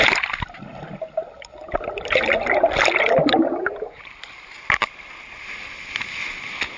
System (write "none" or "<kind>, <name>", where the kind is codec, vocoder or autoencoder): none